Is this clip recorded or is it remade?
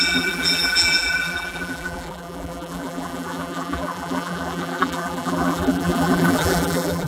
remade